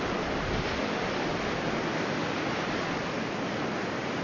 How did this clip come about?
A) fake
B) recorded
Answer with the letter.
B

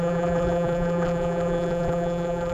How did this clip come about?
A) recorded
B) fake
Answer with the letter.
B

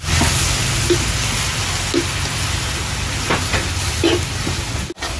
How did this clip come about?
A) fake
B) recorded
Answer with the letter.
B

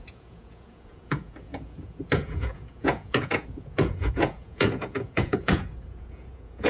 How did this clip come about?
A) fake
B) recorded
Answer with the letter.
A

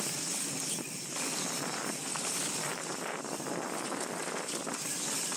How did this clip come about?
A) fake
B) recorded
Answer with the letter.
B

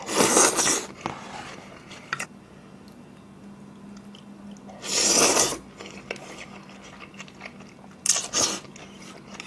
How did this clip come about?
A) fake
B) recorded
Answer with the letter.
B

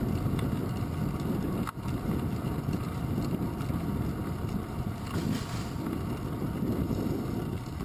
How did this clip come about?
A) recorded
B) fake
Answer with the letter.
A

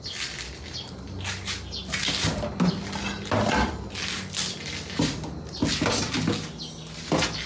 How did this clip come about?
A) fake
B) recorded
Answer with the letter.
B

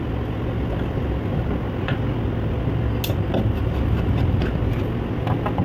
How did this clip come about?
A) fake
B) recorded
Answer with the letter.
B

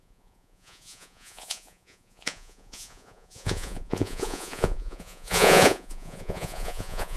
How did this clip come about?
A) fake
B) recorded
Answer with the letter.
A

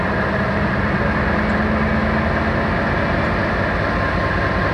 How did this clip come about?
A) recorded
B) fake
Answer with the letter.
A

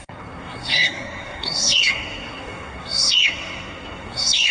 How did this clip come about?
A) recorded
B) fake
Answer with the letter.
B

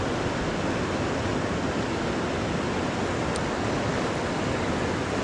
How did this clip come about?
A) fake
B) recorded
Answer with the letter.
B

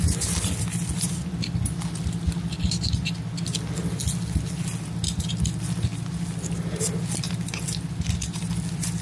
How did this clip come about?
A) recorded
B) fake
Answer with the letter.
A